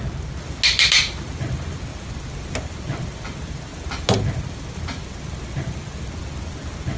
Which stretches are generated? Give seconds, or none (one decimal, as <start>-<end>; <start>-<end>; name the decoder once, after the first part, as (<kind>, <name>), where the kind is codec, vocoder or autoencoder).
none